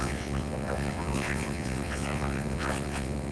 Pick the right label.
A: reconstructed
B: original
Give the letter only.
A